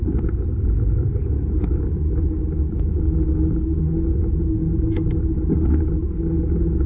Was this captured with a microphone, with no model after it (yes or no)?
yes